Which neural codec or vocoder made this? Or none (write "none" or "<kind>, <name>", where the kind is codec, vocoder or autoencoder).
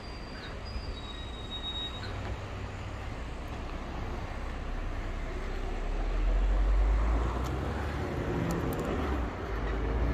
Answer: none